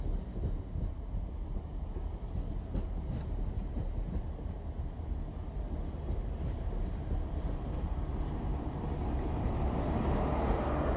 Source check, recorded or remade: recorded